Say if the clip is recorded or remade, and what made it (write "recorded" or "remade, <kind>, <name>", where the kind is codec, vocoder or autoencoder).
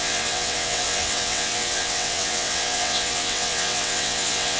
remade, vocoder, WaveNeXt